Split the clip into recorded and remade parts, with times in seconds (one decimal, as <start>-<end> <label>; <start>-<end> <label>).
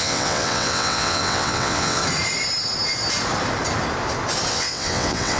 0.0-2.0 remade; 2.0-4.5 recorded; 4.5-5.4 remade